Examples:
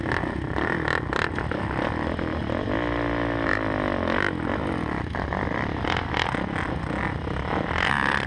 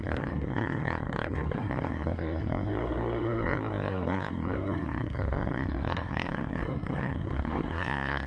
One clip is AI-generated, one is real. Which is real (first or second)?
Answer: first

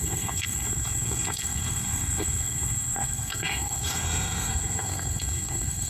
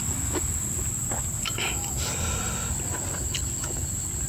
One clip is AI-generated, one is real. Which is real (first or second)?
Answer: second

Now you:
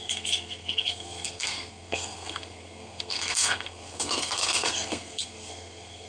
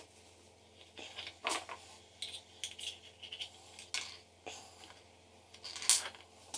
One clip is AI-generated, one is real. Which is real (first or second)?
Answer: second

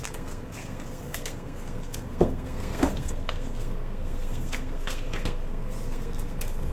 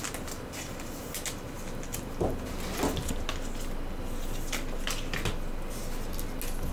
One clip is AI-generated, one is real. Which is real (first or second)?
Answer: second